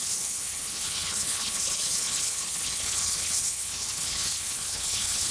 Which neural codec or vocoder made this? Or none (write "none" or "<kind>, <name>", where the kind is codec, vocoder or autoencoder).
codec, HILCodec